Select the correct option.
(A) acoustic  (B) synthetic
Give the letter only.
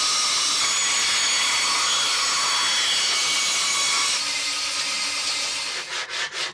A